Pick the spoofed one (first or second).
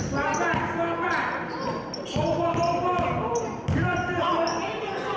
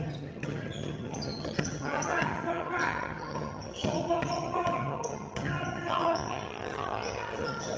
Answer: second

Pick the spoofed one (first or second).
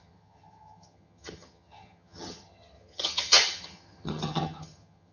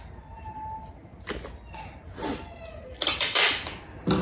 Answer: first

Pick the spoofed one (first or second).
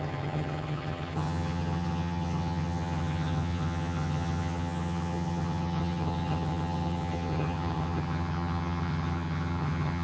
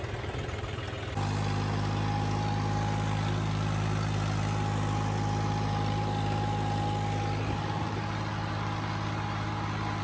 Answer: first